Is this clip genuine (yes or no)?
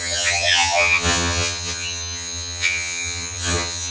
no